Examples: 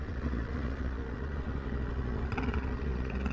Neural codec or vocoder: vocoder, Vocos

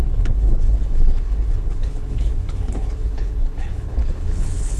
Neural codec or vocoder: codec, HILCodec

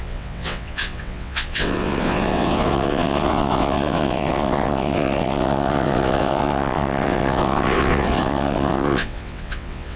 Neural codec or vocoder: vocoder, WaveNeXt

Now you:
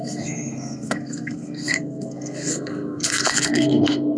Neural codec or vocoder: codec, SNAC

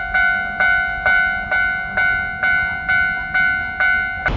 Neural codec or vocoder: none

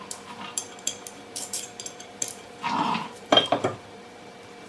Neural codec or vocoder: vocoder, BigVGAN v2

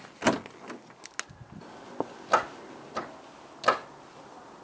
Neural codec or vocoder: none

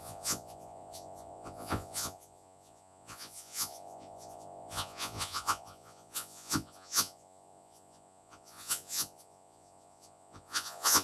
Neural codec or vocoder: vocoder, Vocos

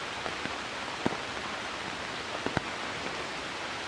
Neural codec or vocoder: none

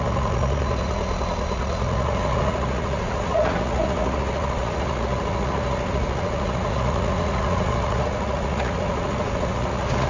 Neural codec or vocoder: vocoder, Vocos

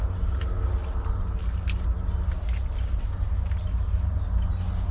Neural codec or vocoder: none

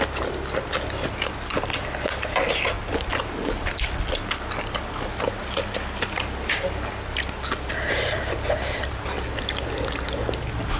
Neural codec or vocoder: none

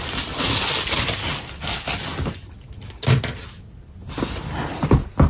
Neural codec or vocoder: none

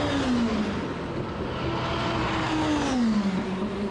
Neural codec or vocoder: none